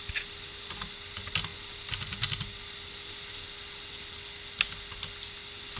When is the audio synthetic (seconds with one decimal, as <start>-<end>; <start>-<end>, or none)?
none